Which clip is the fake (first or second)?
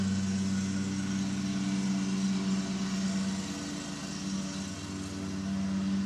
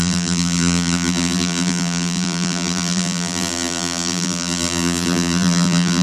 second